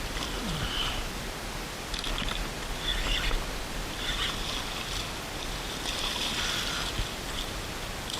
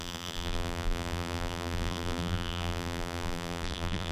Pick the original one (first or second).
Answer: first